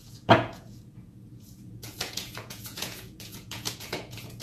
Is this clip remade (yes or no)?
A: yes